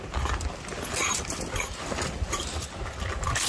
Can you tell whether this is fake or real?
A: real